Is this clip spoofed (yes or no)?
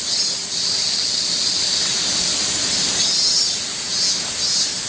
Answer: no